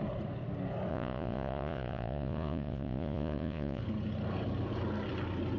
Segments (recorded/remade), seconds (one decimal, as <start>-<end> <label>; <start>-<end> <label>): 0.0-0.9 recorded; 0.9-3.8 remade; 3.8-5.6 recorded